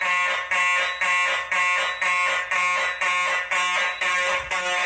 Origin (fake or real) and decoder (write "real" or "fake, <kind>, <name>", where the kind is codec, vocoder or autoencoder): real